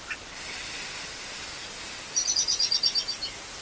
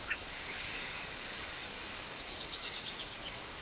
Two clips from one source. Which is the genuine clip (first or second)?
first